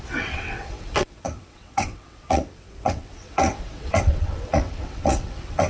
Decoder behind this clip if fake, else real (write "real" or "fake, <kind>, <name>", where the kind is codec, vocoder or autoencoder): fake, vocoder, WaveNeXt